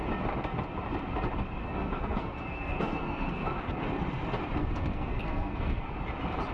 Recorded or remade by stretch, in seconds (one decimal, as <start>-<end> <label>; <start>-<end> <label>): 0.0-1.6 recorded; 1.6-3.7 remade; 3.7-4.6 recorded; 4.6-5.9 remade; 5.9-6.5 recorded